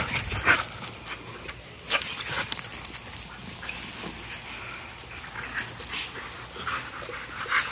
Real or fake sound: real